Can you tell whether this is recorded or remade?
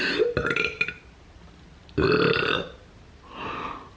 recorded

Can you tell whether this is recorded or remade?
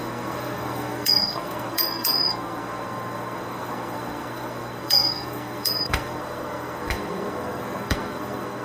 remade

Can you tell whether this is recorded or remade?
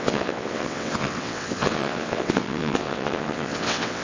remade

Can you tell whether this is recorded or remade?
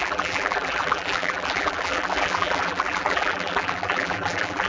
remade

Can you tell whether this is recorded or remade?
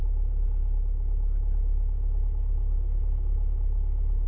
recorded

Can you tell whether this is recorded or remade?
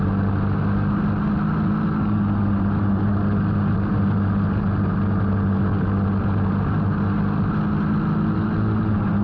recorded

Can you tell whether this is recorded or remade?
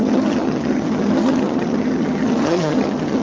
remade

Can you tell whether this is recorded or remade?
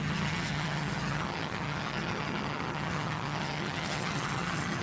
remade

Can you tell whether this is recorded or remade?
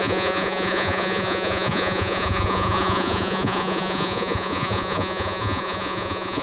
remade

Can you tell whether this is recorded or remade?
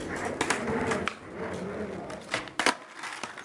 recorded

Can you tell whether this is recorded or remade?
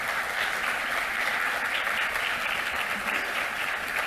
recorded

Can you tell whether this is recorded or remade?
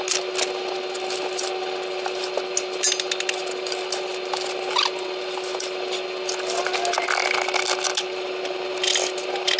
recorded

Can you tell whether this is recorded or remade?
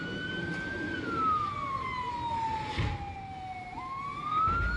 recorded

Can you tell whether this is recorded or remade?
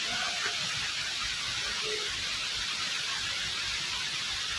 recorded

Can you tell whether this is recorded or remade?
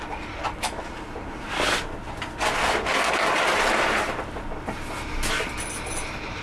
recorded